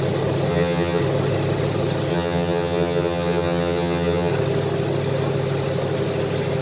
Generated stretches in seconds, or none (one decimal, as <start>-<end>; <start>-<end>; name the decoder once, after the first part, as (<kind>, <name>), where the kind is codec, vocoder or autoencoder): 0.5-1.0 (vocoder, HiFi-GAN); 2.1-4.3